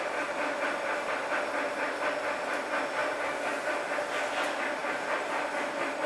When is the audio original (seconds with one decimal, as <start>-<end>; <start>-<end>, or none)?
0.0-4.8; 5.5-6.1